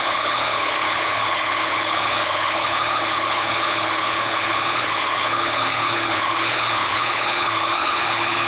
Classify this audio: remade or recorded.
remade